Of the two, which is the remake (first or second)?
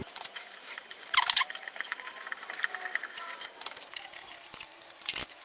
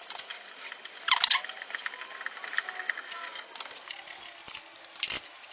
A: first